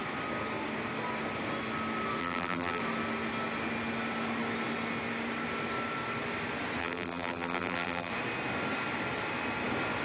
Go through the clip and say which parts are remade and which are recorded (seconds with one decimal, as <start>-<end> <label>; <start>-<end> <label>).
0.0-2.2 recorded; 2.2-2.8 remade; 2.8-6.8 recorded; 6.8-8.1 remade; 8.1-10.0 recorded